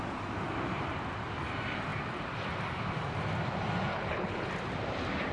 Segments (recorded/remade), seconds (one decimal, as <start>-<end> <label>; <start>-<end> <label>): 0.0-3.9 recorded; 3.9-4.5 remade; 4.5-5.3 recorded